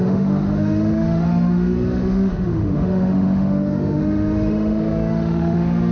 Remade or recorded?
remade